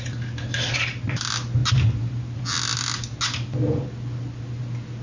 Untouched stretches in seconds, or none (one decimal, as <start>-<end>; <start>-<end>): 0.0-5.0